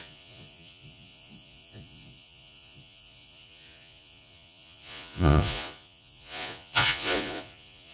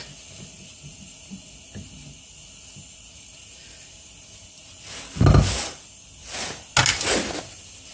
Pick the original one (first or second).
second